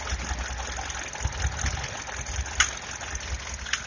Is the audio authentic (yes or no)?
yes